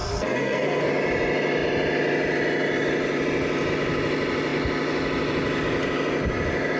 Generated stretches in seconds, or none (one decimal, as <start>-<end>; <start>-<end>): 0.0-0.9